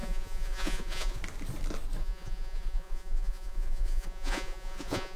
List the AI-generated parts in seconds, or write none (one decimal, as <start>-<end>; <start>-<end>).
0.0-1.2; 2.0-5.2